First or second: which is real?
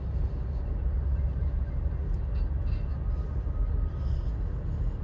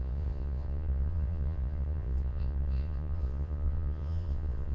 first